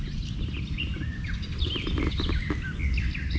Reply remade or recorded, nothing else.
recorded